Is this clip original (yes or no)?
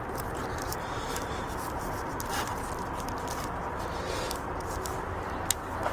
yes